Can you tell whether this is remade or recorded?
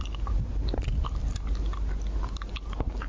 recorded